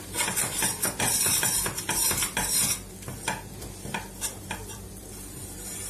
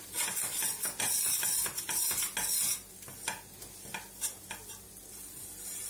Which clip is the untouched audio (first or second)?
second